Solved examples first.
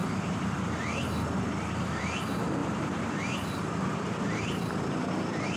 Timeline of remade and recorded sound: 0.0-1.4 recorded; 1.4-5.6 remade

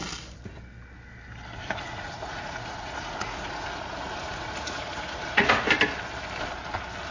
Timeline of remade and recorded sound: 0.0-1.6 recorded; 1.6-5.5 remade; 5.5-7.1 recorded

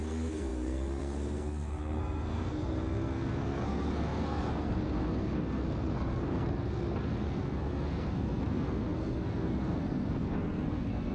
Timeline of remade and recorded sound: 0.0-11.1 remade